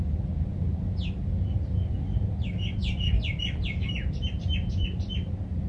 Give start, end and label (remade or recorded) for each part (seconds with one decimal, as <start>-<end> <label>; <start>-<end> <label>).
0.0-5.7 recorded